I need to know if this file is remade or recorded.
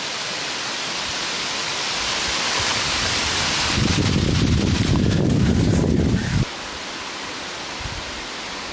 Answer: recorded